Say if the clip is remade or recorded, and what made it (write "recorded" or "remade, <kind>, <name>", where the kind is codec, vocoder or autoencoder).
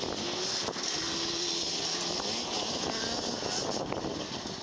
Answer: recorded